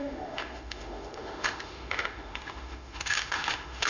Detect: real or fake fake